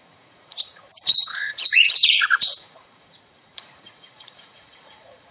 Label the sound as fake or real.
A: fake